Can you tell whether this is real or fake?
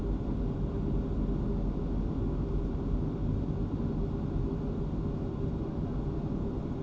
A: real